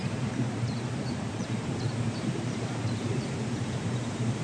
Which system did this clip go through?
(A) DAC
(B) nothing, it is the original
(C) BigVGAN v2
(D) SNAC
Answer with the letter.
C